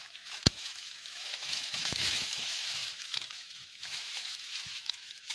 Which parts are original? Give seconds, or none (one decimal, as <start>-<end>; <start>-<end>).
none